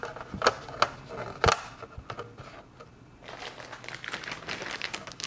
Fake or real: real